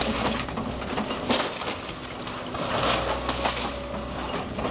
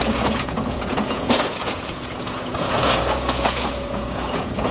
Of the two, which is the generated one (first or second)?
second